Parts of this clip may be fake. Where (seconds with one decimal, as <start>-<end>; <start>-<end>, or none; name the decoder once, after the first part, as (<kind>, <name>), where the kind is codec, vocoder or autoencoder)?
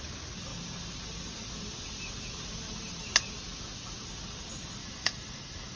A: 4.8-5.8 (autoencoder, DAC-VAE)